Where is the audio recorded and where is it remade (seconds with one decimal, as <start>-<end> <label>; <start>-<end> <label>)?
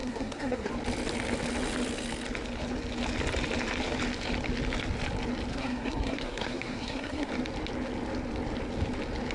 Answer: 0.0-0.7 remade; 0.7-5.5 recorded; 5.5-7.3 remade; 7.3-9.3 recorded